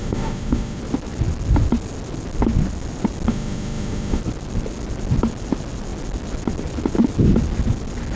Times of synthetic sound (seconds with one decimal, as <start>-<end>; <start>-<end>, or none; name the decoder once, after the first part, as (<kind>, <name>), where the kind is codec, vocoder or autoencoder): 0.0-0.8 (autoencoder, DAC-VAE); 3.3-4.2